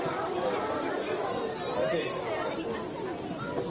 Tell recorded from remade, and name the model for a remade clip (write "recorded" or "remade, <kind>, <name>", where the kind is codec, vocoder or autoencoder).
recorded